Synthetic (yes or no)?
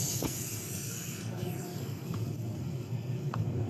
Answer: yes